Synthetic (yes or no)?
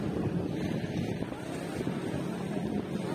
no